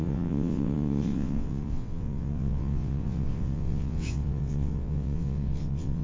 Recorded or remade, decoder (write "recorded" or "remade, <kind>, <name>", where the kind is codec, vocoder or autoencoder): remade, vocoder, WaveNeXt